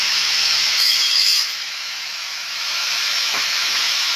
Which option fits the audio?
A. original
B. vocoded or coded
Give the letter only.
B